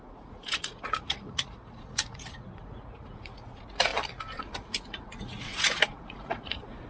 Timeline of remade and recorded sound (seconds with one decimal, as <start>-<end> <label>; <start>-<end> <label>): 0.0-3.9 remade; 3.9-4.4 recorded; 4.4-6.9 remade